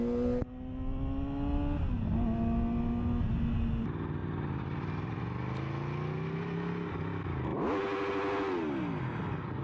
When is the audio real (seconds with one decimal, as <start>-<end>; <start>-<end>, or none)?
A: 0.0-4.2; 5.2-9.6